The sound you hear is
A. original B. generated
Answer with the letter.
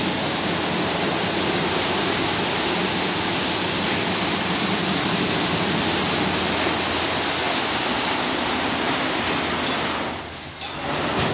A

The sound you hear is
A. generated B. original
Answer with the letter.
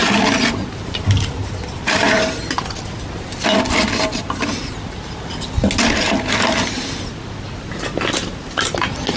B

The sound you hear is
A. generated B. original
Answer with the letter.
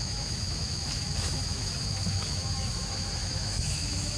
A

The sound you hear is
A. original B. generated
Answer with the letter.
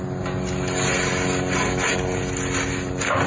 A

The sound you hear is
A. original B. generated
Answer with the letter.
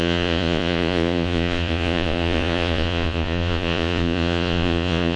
B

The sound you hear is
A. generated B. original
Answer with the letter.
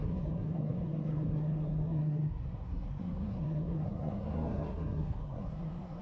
A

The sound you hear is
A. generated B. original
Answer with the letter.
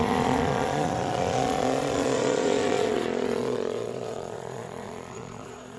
A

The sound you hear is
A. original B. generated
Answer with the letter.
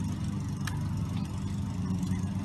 A